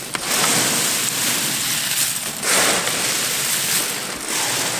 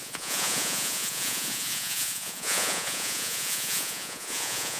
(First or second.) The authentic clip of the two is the first